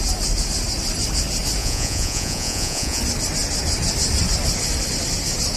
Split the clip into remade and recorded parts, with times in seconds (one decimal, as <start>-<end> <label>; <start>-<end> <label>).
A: 0.0-1.6 recorded; 1.6-3.0 remade; 3.0-5.6 recorded